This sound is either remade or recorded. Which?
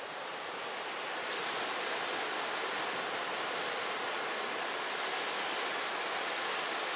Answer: recorded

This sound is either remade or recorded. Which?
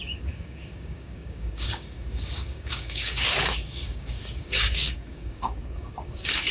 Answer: remade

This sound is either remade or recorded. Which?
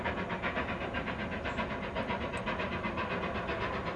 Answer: recorded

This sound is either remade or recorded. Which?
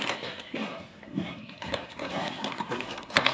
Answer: remade